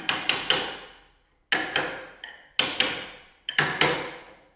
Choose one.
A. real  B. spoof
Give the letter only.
A